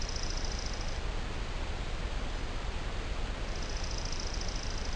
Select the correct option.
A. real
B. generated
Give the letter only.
A